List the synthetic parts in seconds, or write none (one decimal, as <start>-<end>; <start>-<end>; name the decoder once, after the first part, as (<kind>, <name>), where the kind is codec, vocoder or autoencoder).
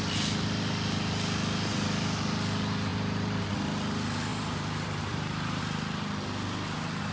2.9-3.5 (vocoder, BigVGAN v2); 4.3-5.6